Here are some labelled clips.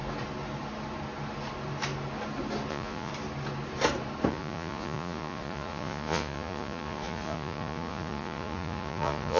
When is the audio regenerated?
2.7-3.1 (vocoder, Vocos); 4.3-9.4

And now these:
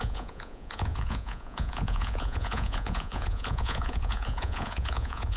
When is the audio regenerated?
0.0-5.4 (vocoder, Vocos)

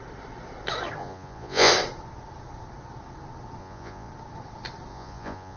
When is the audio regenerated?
1.0-1.7 (vocoder, Vocos); 3.6-4.1; 4.9-5.6

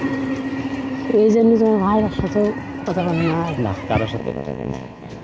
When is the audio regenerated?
4.2-5.2 (vocoder, Vocos)

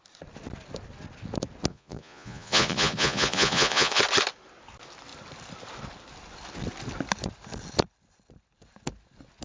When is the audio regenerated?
1.7-4.0 (vocoder, Vocos)

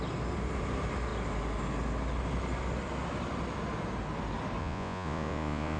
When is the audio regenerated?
4.6-5.8 (vocoder, Vocos)

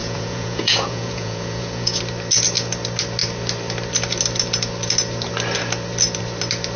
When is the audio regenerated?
0.0-2.0 (vocoder, Vocos)

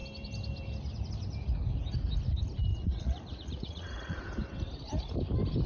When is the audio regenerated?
2.7-4.2 (vocoder, Vocos)